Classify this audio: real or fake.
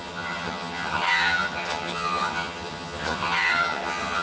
fake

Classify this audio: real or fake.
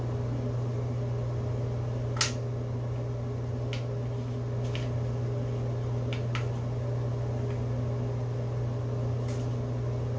real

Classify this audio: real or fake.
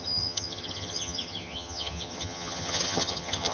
fake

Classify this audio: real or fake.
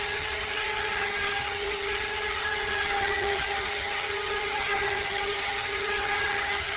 fake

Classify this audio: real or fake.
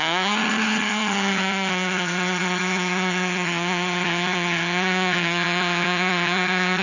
fake